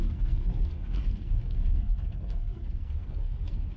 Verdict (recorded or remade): remade